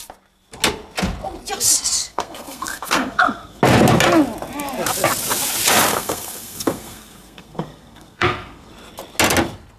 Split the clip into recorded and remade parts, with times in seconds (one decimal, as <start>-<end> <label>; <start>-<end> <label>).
0.0-2.1 recorded; 2.1-3.6 remade; 3.6-5.9 recorded; 5.9-8.7 remade; 8.7-9.8 recorded